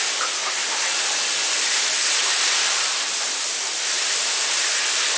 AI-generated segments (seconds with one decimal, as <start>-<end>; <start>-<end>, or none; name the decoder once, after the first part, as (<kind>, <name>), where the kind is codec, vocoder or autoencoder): 0.6-1.2 (vocoder, BigVGAN v2); 2.2-4.6